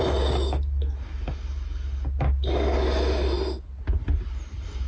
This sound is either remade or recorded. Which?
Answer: recorded